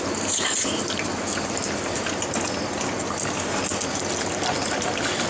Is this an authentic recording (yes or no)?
yes